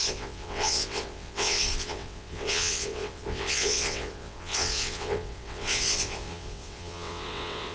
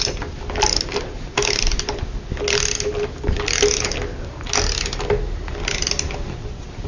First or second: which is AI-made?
first